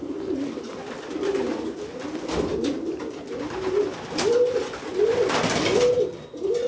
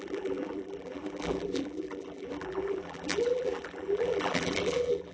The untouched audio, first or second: first